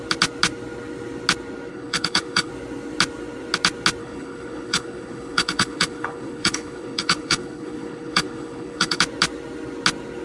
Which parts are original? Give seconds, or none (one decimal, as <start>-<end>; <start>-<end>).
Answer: 0.0-1.7; 2.5-4.0; 9.0-10.2